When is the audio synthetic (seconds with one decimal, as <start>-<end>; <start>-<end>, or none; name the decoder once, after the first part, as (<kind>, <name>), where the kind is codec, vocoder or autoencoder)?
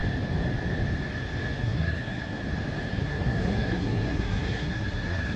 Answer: 1.6-2.4 (codec, SNAC); 2.9-5.4